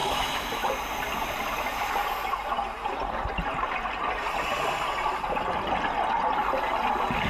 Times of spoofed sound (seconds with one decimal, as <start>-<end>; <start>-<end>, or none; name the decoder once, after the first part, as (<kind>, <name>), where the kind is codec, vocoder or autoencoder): 0.0-0.7 (autoencoder, DAC-VAE)